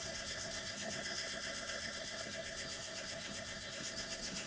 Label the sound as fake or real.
fake